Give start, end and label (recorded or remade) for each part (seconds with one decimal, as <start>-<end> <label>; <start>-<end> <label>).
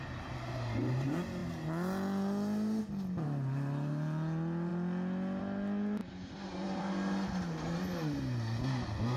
0.0-6.0 recorded; 6.0-6.8 remade; 6.8-9.2 recorded